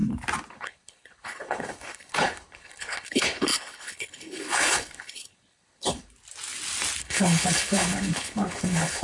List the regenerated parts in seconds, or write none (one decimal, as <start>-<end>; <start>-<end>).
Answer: 0.5-6.1; 7.0-9.0